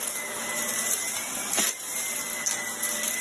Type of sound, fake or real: real